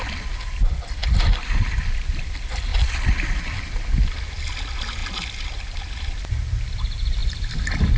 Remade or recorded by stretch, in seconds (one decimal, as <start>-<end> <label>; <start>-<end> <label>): 0.0-8.0 recorded